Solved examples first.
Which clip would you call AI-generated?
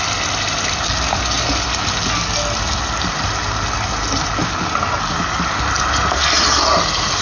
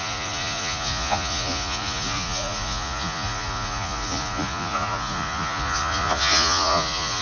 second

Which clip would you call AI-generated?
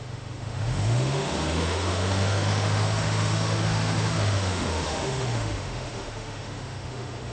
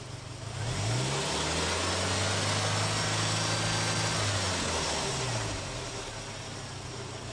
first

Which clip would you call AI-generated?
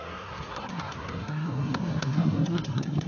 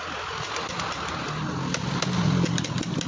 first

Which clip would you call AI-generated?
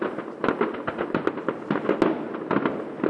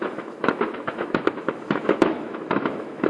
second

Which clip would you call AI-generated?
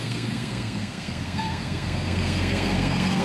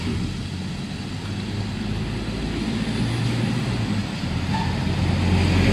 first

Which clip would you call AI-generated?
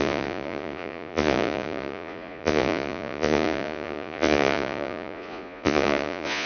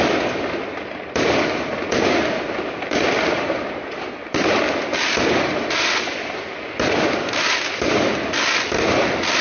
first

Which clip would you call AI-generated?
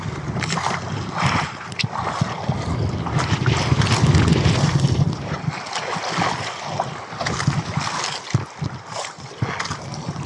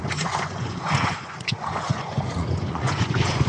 second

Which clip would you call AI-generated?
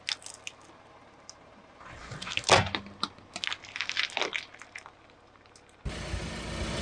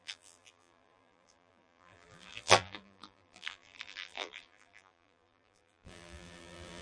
second